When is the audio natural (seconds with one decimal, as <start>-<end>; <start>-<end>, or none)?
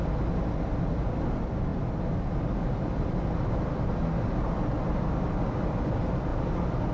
0.0-6.9